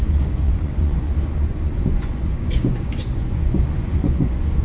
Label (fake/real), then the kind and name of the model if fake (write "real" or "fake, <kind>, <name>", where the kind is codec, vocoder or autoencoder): fake, vocoder, Vocos